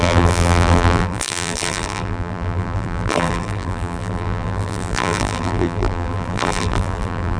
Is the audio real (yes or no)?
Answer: no